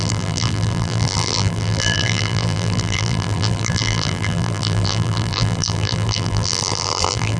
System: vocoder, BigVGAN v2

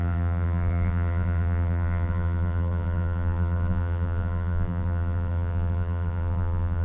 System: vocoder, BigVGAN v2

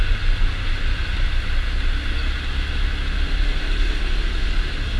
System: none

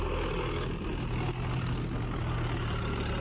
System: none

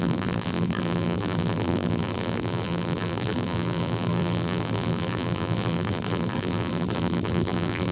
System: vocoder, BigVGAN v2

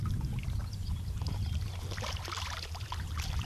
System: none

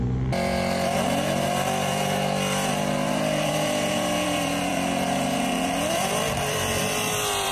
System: vocoder, BigVGAN v2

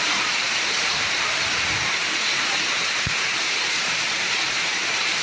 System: vocoder, BigVGAN v2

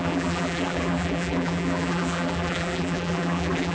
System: vocoder, BigVGAN v2